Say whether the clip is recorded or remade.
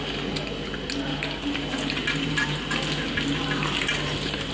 recorded